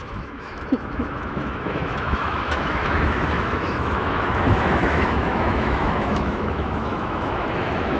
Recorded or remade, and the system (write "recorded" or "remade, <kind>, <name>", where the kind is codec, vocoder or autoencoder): remade, autoencoder, DAC-VAE